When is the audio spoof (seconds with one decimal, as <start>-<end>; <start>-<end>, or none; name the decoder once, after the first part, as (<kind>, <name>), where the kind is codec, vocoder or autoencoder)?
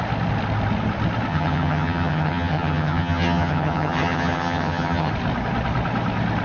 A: 1.3-5.1 (vocoder, HiFi-GAN)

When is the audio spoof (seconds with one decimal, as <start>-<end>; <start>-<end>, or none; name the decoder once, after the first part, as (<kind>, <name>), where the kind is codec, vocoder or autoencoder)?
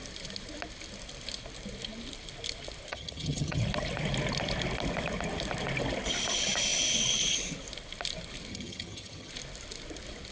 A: 2.9-3.6 (vocoder, HiFi-GAN); 8.5-9.3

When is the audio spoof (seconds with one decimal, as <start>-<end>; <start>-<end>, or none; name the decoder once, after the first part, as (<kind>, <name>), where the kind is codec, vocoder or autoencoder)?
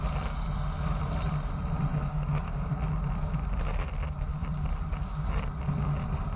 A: 1.9-2.7 (codec, DAC)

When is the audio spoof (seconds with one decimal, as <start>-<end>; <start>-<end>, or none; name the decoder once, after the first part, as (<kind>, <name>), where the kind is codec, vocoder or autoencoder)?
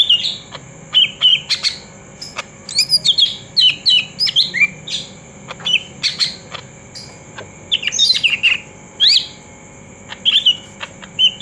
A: none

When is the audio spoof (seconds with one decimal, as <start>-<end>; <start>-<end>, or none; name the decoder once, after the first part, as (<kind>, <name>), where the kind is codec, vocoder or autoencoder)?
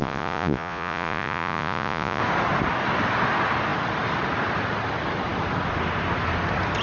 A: 0.0-2.2 (vocoder, Vocos)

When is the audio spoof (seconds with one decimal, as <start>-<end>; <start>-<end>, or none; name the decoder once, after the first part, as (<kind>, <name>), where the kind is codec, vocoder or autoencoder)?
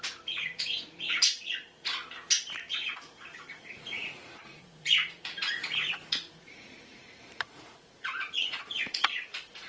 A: 0.0-1.9 (vocoder, Vocos); 2.7-9.7